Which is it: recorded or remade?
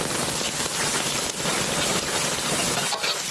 recorded